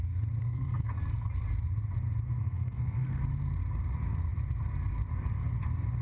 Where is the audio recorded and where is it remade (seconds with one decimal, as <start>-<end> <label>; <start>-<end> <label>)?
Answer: 0.0-0.4 recorded; 0.4-0.9 remade; 0.9-2.4 recorded; 2.4-3.2 remade; 3.2-6.0 recorded